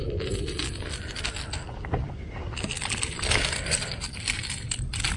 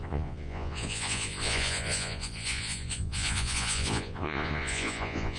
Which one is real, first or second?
first